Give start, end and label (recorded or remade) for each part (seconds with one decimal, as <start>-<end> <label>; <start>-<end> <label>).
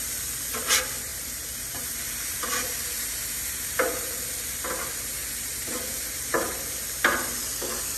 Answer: 0.0-1.1 recorded; 1.1-4.2 remade; 4.2-5.2 recorded; 5.2-6.5 remade; 6.5-8.0 recorded